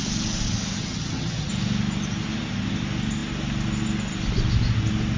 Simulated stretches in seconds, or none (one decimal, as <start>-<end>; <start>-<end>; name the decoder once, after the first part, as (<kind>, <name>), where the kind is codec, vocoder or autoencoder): 0.8-1.5 (vocoder, HiFi-GAN)